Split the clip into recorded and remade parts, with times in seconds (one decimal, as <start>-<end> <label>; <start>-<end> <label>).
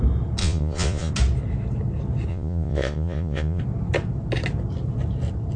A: 0.0-0.4 recorded; 0.4-1.1 remade; 1.1-2.3 recorded; 2.3-3.6 remade; 3.6-5.6 recorded